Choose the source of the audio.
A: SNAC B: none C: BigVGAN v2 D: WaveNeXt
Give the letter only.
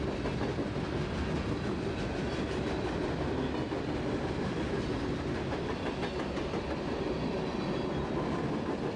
B